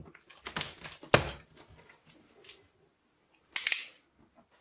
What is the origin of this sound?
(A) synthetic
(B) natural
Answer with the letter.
B